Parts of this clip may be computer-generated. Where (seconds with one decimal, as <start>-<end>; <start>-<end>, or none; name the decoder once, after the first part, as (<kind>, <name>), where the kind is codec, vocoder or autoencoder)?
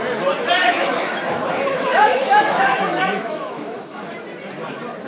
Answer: 0.6-1.2 (autoencoder, DAC-VAE); 1.7-4.0